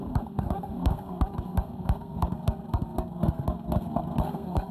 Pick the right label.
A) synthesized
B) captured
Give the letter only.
A